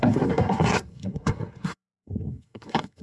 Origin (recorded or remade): remade